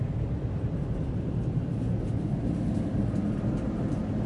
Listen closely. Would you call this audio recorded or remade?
recorded